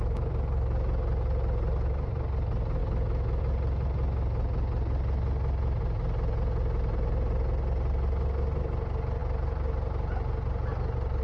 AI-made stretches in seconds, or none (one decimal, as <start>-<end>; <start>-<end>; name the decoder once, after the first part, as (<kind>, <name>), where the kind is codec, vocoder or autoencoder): 2.8-3.4 (autoencoder, DAC-VAE)